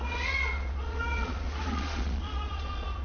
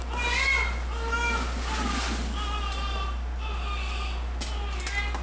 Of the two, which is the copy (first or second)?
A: first